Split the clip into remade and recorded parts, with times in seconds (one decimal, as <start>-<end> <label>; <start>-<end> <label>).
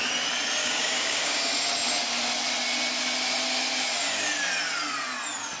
0.0-0.6 recorded; 0.6-1.5 remade; 1.5-5.6 recorded